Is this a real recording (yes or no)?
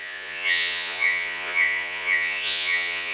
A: no